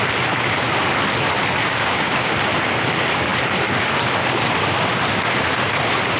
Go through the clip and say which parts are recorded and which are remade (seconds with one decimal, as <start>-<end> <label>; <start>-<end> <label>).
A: 0.0-1.6 recorded; 1.6-2.3 remade; 2.3-6.2 recorded